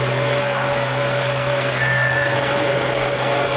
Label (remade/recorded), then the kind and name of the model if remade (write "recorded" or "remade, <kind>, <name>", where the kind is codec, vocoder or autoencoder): remade, codec, SNAC